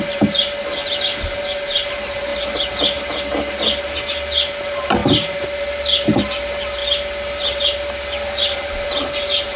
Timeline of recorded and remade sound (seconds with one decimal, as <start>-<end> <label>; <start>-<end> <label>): 0.0-2.3 remade; 2.3-4.3 recorded; 4.3-5.0 remade; 5.0-5.6 recorded; 5.6-6.8 remade; 6.8-7.4 recorded; 7.4-9.6 remade